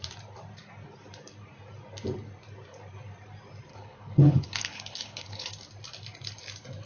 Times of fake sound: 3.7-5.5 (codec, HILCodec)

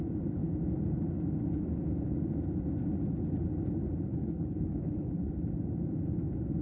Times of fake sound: 4.1-5.3 (codec, HILCodec)

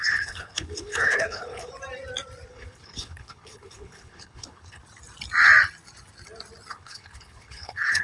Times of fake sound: 0.0-1.7 (codec, HILCodec); 2.5-4.8; 6.7-8.0

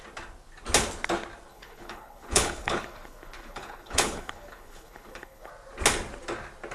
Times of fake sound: 1.5-5.5 (codec, HILCodec)

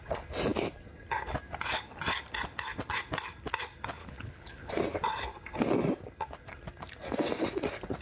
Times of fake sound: 4.0-4.7 (codec, HILCodec)

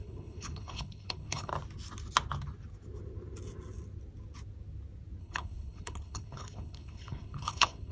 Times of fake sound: 0.0-1.5 (codec, HILCodec); 5.2-7.9